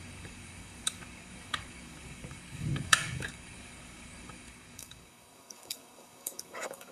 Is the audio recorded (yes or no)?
no